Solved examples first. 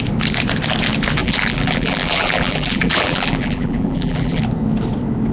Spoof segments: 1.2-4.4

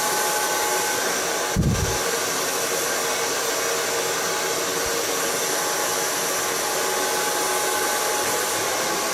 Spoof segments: none

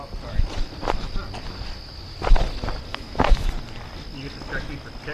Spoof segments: 2.9-3.5